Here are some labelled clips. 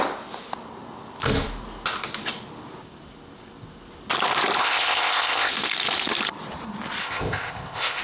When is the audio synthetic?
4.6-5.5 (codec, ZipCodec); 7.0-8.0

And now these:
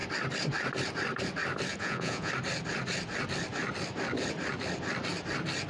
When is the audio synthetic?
1.7-2.3 (vocoder, Vocos)

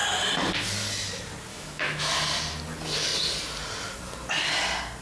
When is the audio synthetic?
1.5-2.1 (autoencoder, DAC-VAE)

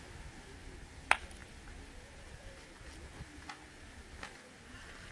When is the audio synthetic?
none